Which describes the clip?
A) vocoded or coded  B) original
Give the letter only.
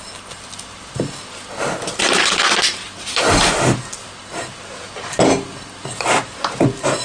B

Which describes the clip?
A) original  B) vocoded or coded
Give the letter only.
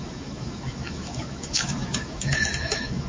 B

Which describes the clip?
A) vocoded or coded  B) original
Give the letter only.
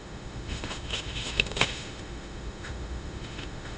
A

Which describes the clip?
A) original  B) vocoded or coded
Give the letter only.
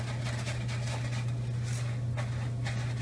A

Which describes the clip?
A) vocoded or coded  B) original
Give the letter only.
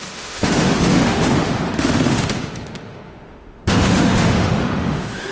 A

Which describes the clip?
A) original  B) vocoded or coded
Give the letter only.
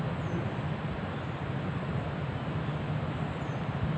A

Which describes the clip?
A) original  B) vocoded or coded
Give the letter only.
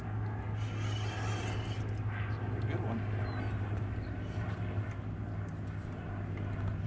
A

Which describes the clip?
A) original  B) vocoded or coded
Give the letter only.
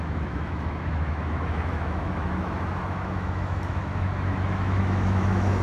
B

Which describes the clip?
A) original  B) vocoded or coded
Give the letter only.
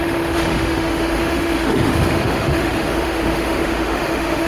B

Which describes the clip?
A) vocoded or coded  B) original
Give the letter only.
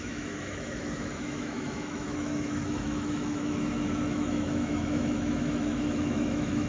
A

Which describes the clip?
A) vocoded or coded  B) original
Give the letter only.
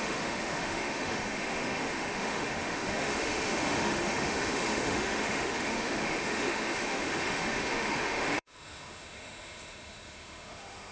A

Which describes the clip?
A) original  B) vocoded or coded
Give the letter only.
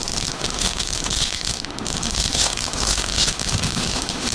B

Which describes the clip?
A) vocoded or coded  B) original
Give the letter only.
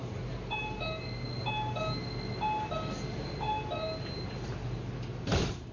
B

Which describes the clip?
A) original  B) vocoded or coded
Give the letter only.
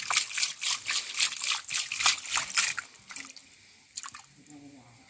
A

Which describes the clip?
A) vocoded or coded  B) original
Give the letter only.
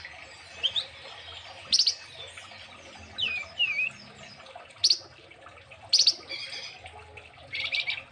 B